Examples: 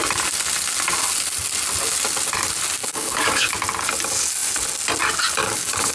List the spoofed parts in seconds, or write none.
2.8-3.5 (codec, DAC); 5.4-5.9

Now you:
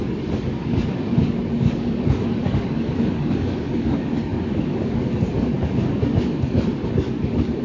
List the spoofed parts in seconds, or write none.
0.0-7.6 (codec, DAC)

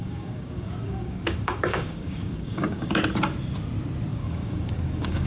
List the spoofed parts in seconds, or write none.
0.0-3.0 (codec, DAC); 4.1-5.3

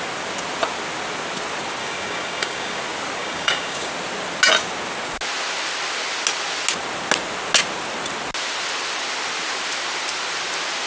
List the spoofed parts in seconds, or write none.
1.8-2.8 (codec, DAC); 3.2-3.9